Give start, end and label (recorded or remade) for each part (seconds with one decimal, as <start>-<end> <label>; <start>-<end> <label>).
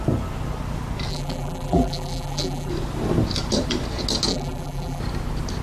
0.0-1.1 recorded; 1.1-2.7 remade; 2.7-4.3 recorded; 4.3-5.0 remade; 5.0-5.6 recorded